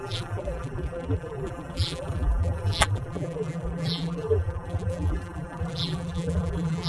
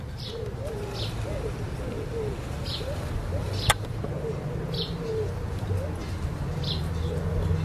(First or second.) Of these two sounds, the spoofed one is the first